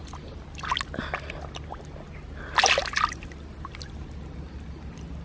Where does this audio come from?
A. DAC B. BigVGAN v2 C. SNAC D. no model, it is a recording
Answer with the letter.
D